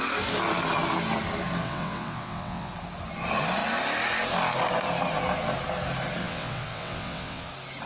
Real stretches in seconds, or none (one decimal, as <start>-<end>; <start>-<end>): 0.0-1.6; 2.7-6.2; 7.5-7.9